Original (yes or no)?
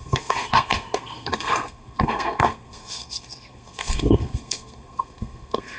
no